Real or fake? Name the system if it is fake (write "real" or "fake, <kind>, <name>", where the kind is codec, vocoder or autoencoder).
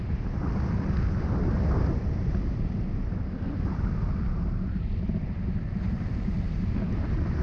real